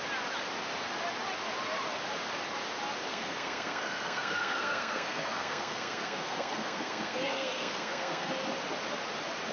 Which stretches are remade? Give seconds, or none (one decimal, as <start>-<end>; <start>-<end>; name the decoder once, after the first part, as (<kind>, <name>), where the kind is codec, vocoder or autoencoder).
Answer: 3.1-8.3 (codec, SNAC)